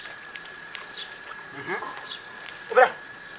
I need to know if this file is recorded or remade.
remade